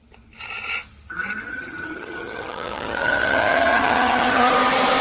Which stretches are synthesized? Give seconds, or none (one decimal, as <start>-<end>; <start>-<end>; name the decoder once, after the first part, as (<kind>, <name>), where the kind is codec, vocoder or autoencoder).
1.5-4.5 (vocoder, HiFi-GAN)